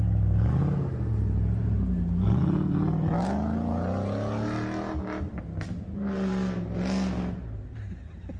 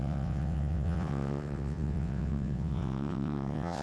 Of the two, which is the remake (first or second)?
second